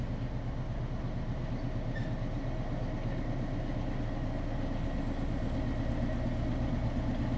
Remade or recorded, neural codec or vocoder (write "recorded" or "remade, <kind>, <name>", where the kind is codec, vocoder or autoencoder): recorded